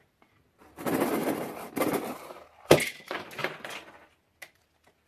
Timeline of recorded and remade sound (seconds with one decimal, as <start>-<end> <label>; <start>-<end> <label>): 0.0-1.2 recorded; 1.2-2.0 remade; 2.0-3.4 recorded; 3.4-4.3 remade; 4.3-5.1 recorded